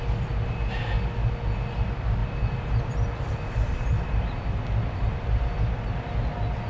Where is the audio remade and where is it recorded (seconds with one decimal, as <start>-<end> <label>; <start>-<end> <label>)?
0.0-2.2 recorded; 2.2-5.5 remade; 5.5-6.7 recorded